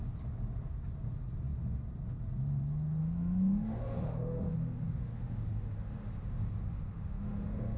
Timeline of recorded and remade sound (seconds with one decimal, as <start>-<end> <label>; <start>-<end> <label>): 0.0-3.0 recorded; 3.0-7.8 remade